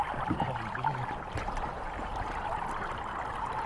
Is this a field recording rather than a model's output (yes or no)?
yes